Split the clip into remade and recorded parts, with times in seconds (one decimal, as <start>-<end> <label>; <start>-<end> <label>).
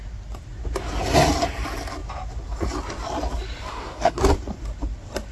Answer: 0.0-3.7 recorded; 3.7-4.2 remade; 4.2-5.3 recorded